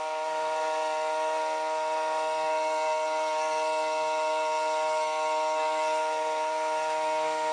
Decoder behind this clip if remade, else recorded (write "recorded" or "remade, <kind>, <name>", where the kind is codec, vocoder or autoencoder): remade, codec, SNAC